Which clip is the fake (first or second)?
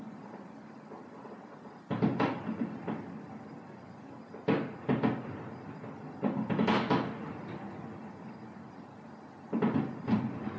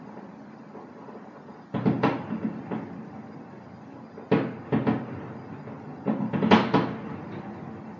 first